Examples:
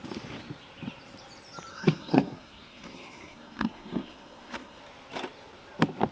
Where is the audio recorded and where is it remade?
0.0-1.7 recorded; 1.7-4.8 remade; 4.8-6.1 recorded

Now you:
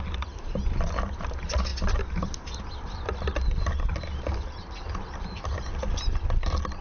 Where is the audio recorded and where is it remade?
0.0-6.8 recorded

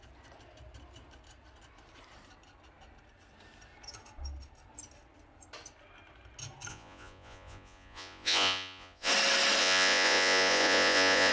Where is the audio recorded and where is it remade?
0.0-6.7 recorded; 6.7-9.1 remade; 9.1-9.6 recorded; 9.6-11.3 remade

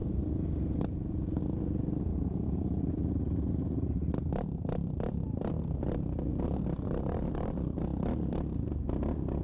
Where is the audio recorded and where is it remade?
0.0-1.4 remade; 1.4-2.1 recorded; 2.1-5.5 remade; 5.5-9.4 recorded